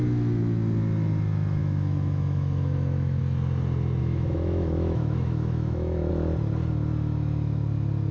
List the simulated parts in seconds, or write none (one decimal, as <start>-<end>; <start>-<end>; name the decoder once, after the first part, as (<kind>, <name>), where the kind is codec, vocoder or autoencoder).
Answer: 1.6-3.2 (autoencoder, DAC-VAE); 4.0-6.1